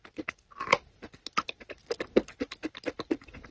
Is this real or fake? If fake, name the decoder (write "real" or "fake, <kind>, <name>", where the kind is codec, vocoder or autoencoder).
real